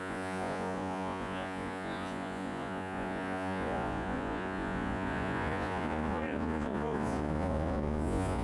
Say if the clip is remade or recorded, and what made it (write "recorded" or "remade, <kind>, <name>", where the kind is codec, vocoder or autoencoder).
remade, vocoder, Vocos